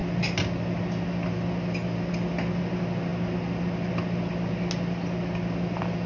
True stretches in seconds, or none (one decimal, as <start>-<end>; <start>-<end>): 0.0-6.1